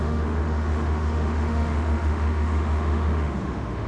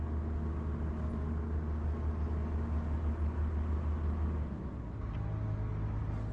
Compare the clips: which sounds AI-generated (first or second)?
first